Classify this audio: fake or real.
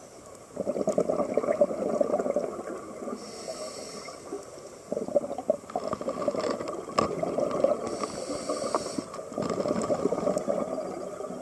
real